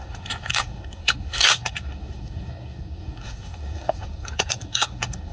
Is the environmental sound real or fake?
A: fake